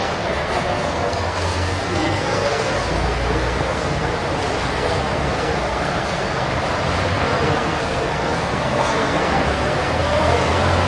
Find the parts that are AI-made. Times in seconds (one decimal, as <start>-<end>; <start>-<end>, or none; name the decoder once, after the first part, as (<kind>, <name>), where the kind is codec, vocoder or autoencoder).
0.0-4.1 (codec, SNAC); 4.6-6.5; 7.1-10.9